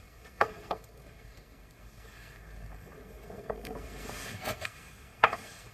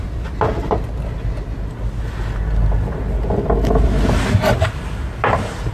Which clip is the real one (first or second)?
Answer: second